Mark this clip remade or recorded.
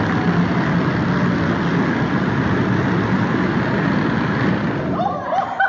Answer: recorded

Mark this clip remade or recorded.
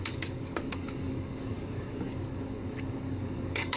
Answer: remade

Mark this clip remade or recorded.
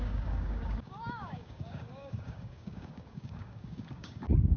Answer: remade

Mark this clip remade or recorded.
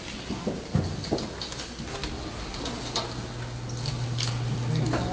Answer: recorded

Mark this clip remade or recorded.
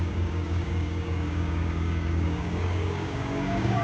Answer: remade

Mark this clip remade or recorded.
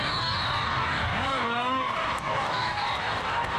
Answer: remade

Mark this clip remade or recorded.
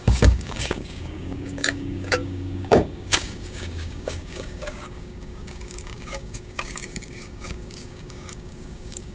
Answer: remade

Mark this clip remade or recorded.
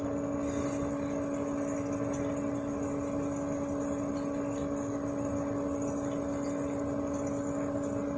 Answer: recorded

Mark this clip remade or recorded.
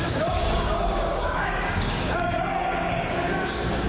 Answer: remade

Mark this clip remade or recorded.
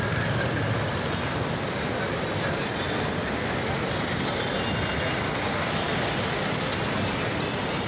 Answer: recorded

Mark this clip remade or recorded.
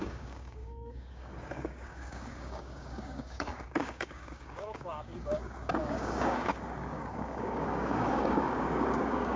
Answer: remade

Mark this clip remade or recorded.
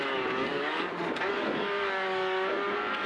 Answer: remade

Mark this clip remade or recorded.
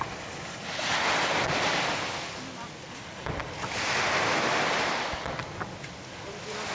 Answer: recorded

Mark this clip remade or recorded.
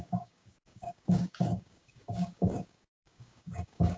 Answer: remade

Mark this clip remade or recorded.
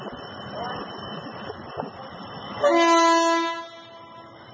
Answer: recorded